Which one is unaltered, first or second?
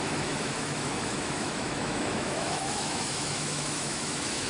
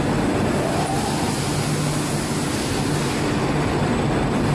second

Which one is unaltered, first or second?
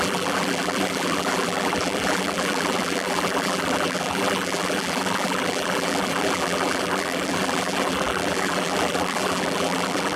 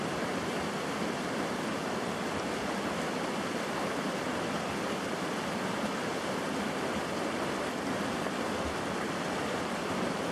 second